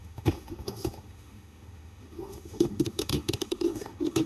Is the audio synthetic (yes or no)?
yes